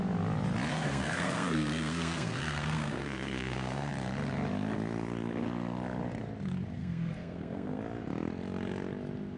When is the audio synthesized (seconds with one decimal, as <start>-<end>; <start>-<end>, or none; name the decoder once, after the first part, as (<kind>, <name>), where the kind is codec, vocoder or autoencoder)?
0.7-3.9 (codec, SNAC); 6.8-7.8